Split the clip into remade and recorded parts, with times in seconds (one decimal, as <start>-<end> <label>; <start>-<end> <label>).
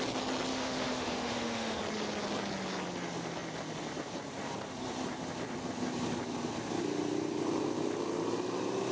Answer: 0.0-0.5 recorded; 0.5-1.8 remade; 1.8-8.9 recorded